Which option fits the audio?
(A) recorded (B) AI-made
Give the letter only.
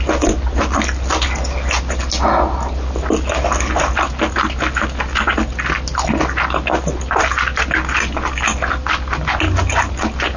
A